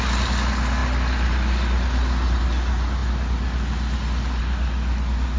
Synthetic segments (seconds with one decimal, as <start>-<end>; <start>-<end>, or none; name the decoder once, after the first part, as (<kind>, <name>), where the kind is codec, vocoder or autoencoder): none

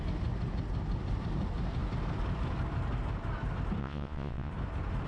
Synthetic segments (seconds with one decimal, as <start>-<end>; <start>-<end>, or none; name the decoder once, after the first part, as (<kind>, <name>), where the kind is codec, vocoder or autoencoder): 3.8-4.5 (vocoder, Vocos)

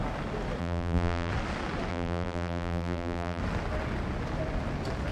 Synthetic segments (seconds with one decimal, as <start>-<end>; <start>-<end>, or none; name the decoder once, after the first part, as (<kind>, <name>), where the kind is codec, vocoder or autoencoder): 0.6-1.3 (vocoder, BigVGAN v2); 1.9-3.4